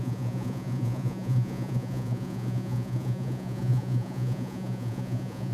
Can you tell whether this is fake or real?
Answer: fake